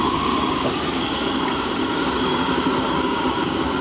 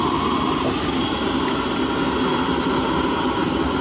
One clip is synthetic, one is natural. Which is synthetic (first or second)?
first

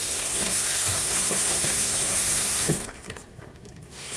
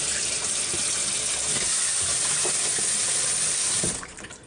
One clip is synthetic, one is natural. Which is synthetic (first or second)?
first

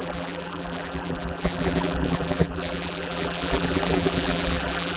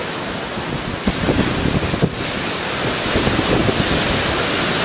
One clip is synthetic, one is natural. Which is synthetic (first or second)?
first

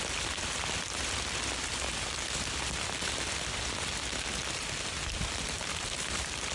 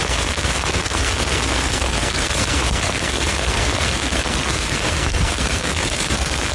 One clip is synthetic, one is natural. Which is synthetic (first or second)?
second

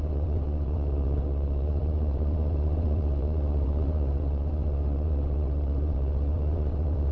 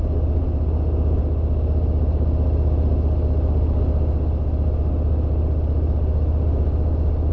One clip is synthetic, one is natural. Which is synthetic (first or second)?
first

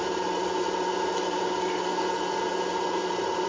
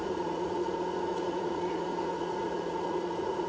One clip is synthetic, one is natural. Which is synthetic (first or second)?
second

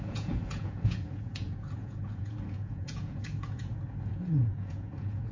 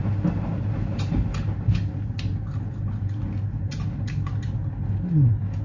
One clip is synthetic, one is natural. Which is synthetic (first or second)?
first